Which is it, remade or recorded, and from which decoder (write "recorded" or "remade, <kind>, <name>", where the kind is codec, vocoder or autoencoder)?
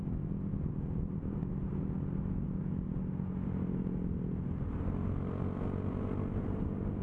recorded